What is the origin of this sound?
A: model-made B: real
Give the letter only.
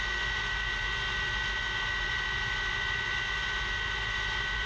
B